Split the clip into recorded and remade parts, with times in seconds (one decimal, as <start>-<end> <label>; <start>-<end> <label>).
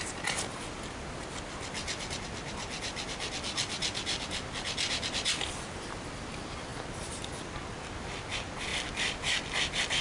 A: 0.0-10.0 recorded